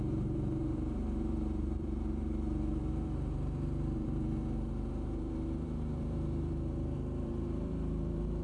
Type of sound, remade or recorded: remade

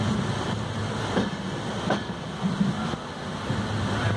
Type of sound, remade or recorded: remade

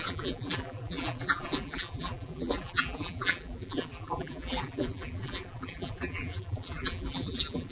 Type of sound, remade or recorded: remade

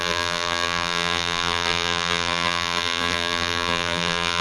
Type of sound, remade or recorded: remade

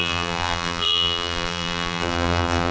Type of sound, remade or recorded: remade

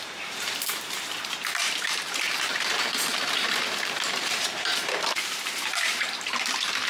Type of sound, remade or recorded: remade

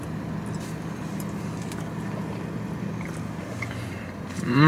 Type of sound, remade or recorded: recorded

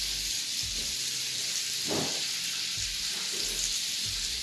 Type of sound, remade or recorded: remade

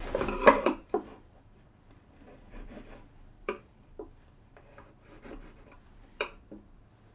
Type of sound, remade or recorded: remade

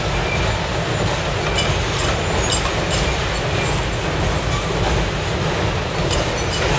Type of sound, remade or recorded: recorded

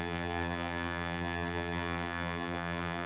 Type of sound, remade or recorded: remade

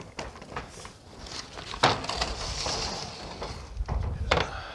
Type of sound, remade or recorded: recorded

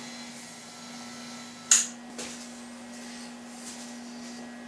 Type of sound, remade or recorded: recorded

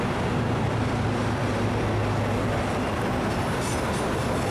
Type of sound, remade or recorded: recorded